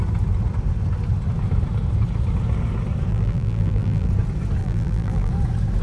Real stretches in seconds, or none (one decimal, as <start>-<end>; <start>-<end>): 0.0-3.1; 4.1-4.6; 5.3-5.8